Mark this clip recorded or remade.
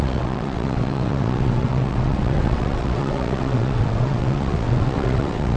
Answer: remade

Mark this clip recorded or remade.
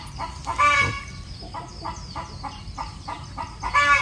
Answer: recorded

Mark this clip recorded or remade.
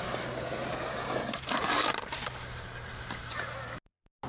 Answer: recorded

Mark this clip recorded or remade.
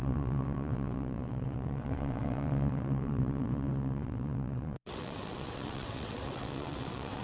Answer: remade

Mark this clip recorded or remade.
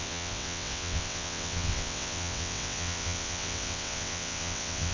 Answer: remade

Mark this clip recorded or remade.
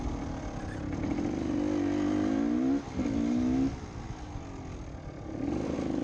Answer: recorded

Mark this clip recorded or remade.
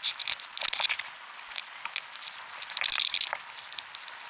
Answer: recorded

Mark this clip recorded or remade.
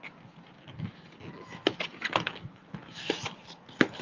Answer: recorded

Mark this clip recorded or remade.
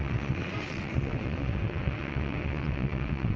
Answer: remade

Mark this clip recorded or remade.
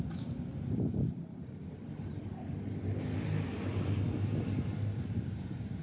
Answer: recorded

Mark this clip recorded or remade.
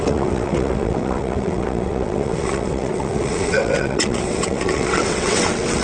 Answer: remade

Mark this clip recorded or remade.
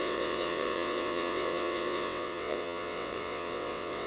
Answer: remade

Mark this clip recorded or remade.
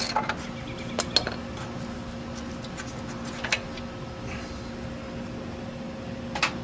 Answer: recorded